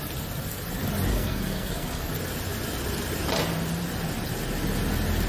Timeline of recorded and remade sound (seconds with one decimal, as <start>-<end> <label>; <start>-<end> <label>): 0.0-1.1 recorded; 1.1-2.1 remade; 2.1-5.3 recorded